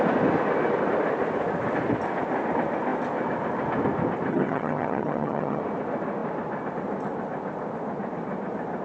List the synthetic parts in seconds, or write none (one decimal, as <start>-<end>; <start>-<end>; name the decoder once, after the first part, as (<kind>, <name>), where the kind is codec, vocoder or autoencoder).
4.3-5.6 (vocoder, HiFi-GAN)